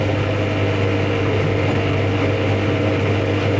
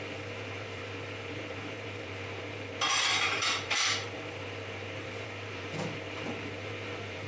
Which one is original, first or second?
first